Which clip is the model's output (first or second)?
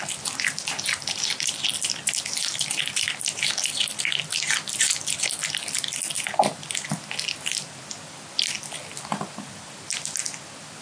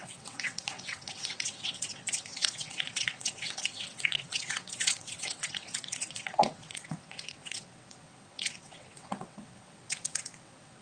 second